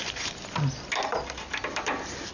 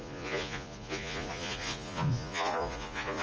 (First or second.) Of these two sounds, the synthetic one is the second